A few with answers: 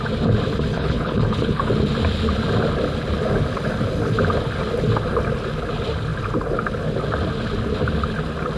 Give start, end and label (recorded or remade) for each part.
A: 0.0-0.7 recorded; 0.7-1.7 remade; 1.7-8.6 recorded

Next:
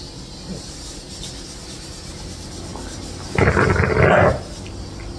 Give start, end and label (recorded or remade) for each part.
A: 0.0-5.2 recorded

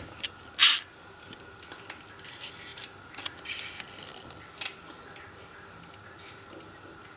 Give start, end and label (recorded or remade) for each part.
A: 0.0-7.2 recorded